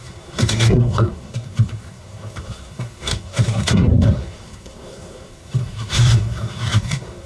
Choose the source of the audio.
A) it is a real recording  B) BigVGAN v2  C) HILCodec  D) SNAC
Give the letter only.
D